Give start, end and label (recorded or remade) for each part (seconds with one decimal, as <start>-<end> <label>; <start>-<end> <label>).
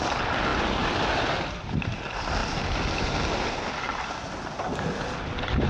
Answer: 0.0-5.7 recorded